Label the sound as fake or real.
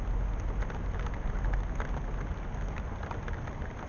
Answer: real